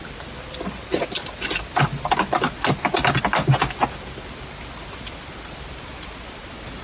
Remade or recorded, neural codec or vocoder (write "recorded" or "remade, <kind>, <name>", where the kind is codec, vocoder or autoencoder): recorded